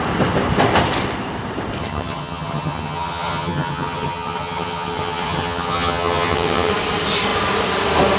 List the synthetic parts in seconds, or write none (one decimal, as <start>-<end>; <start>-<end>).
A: 1.8-6.7